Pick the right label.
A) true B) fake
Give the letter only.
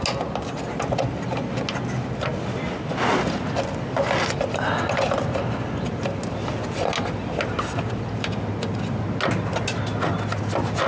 A